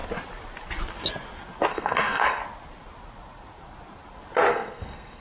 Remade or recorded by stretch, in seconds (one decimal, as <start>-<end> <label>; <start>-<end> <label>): 0.0-1.7 recorded; 1.7-2.4 remade; 2.4-4.5 recorded; 4.5-5.2 remade